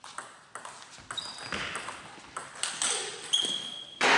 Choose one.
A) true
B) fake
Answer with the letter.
A